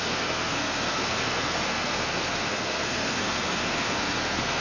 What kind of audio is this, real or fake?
fake